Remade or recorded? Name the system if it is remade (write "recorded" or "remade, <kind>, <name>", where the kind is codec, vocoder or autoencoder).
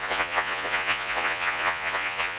remade, vocoder, Vocos